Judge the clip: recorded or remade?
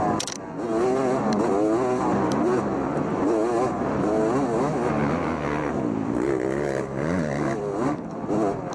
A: recorded